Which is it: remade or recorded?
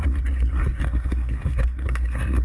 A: remade